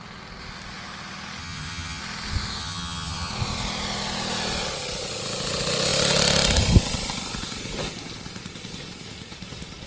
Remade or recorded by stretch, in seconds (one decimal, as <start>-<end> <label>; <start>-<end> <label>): 0.0-1.4 recorded; 1.4-2.0 remade; 2.0-2.6 recorded; 2.6-3.3 remade; 3.3-9.9 recorded